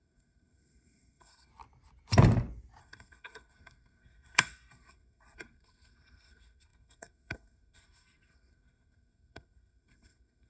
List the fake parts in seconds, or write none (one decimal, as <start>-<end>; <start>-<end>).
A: 0.0-1.5; 2.8-10.5